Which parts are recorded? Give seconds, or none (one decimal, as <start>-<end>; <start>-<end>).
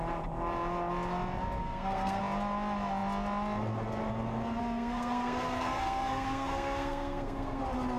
0.0-1.6; 2.2-4.6; 7.6-8.0